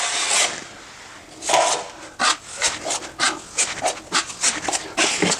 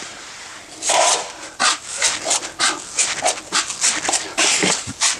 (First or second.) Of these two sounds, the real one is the first